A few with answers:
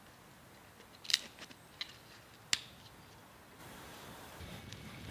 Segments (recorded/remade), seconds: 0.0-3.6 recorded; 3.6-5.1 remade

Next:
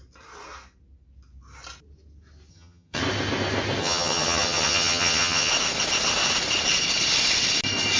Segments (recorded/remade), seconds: 0.0-2.5 recorded; 2.5-3.0 remade; 3.0-3.8 recorded; 3.8-5.5 remade; 5.5-8.0 recorded

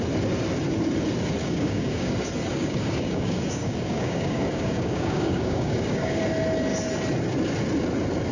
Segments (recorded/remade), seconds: 0.0-1.4 recorded; 1.4-2.1 remade; 2.1-2.5 recorded; 2.5-6.2 remade; 6.2-8.3 recorded

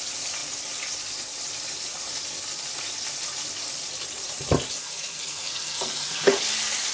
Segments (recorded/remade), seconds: 0.0-4.8 recorded; 4.8-6.4 remade; 6.4-6.9 recorded

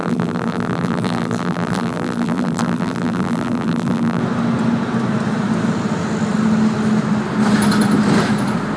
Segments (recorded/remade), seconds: 0.0-4.2 remade; 4.2-8.8 recorded

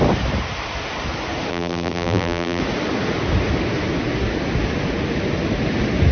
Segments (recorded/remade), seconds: 0.0-1.5 recorded; 1.5-2.6 remade; 2.6-6.1 recorded

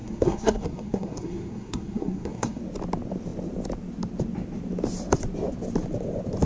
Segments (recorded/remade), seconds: 0.0-2.6 remade; 2.6-6.5 recorded